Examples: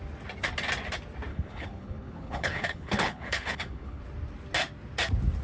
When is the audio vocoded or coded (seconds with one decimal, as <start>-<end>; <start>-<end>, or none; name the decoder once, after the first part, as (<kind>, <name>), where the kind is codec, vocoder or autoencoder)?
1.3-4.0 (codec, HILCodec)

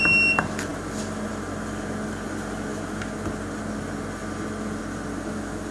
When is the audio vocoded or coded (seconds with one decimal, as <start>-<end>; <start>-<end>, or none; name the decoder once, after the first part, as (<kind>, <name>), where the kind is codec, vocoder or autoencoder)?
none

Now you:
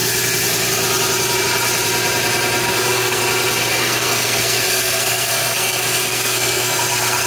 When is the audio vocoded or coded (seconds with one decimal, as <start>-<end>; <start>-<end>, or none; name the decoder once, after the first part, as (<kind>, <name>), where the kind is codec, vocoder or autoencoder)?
2.6-3.2 (codec, SNAC); 3.7-7.3